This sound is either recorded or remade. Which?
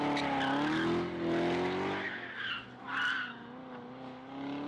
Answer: recorded